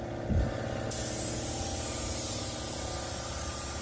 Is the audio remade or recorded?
recorded